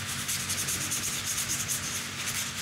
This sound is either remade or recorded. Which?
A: recorded